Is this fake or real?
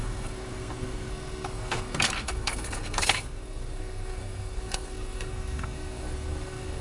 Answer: fake